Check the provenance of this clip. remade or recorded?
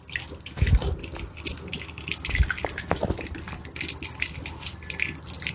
recorded